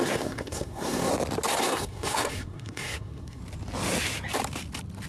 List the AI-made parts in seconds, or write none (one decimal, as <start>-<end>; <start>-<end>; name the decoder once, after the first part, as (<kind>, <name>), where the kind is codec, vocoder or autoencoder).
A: 0.0-1.1 (codec, SNAC); 1.6-3.4